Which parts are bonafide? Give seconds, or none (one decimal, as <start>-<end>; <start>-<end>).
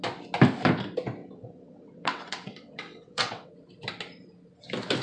0.0-1.2; 3.5-5.0